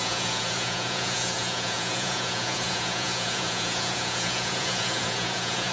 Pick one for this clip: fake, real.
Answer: fake